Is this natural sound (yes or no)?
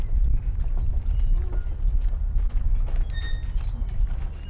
yes